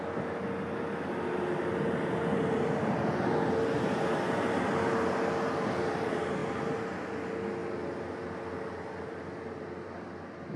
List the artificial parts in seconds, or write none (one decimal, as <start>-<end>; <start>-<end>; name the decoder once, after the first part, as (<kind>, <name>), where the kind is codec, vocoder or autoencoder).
none

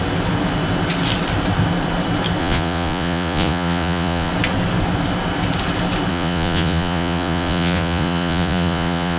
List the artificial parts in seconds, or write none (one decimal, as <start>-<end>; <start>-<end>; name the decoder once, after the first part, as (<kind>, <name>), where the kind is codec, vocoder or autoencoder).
2.4-4.3 (vocoder, Vocos); 6.1-9.2

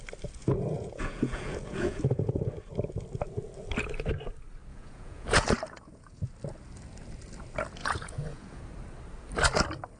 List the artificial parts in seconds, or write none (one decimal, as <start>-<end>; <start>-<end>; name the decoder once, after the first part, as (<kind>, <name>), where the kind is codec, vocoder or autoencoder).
0.4-2.4 (vocoder, Vocos); 4.7-6.3; 7.8-8.6

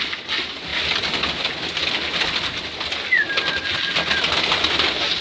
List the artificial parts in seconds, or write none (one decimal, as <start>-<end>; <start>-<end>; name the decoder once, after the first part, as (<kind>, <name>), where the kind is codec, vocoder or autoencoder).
none

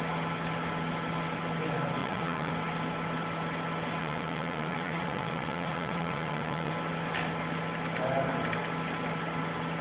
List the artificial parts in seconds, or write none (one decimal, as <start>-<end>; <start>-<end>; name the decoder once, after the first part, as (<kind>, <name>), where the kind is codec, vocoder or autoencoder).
2.0-2.5 (vocoder, Vocos); 4.0-6.7

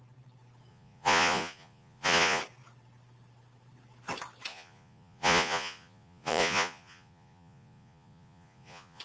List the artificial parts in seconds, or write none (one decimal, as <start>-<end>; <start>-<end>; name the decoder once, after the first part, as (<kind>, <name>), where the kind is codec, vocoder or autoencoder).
0.7-2.4 (vocoder, Vocos); 4.5-9.0